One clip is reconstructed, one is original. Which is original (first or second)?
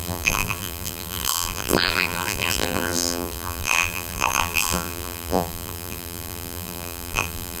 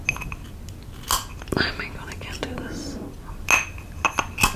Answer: second